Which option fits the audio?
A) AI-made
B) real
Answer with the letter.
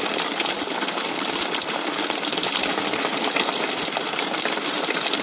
A